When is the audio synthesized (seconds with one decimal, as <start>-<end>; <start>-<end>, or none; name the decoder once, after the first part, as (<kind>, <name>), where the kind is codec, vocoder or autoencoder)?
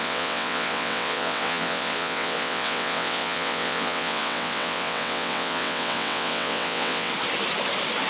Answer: 0.0-7.1 (vocoder, WaveNeXt)